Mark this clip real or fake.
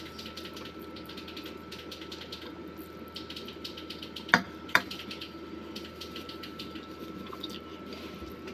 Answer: fake